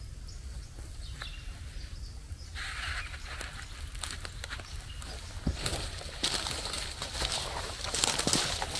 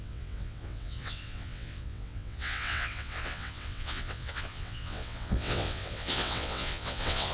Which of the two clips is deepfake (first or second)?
second